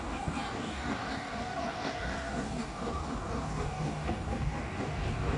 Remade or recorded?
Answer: remade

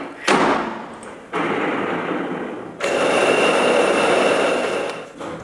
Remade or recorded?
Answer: recorded